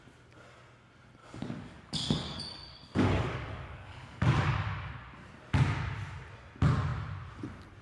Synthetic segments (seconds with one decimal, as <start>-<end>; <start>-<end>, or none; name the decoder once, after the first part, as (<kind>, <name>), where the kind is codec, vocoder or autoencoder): 1.2-4.9 (codec, DAC)